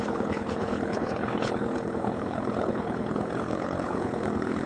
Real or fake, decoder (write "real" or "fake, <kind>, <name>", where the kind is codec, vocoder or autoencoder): fake, codec, HILCodec